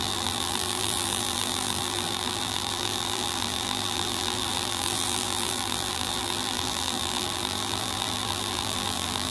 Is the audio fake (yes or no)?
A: yes